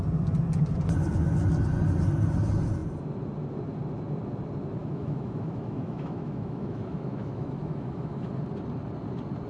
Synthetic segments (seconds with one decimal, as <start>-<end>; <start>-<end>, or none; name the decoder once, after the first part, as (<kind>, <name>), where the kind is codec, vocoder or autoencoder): 4.8-8.3 (autoencoder, DAC-VAE)